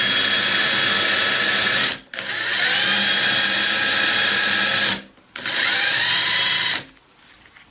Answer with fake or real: real